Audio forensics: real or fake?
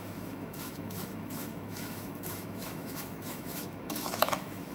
fake